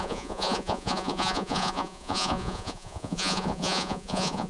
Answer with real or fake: fake